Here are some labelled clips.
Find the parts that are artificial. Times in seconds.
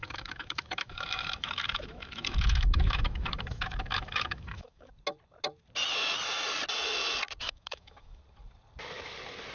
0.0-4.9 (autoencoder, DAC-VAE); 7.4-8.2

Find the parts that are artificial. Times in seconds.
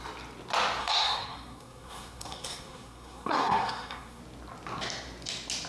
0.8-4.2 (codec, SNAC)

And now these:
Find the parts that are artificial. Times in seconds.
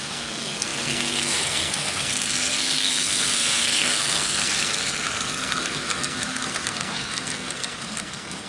0.0-8.5 (codec, SNAC)